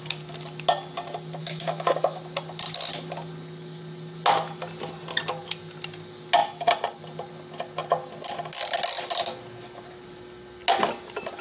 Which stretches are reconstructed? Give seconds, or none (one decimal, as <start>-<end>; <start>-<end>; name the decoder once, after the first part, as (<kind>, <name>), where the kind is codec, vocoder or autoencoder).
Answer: 1.4-2.2 (autoencoder, DAC-VAE)